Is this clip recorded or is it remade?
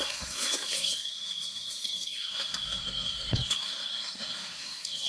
remade